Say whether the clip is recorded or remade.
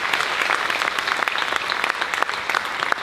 recorded